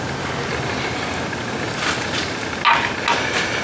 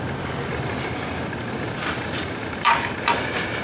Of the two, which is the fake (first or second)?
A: second